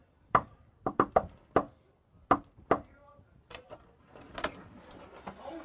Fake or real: real